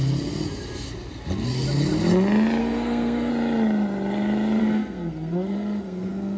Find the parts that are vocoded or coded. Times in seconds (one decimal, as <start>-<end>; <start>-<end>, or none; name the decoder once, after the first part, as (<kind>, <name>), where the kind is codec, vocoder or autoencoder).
2.6-3.3 (codec, SNAC); 4.6-6.4